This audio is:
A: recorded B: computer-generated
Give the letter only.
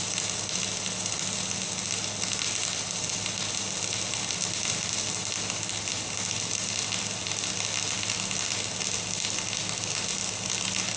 A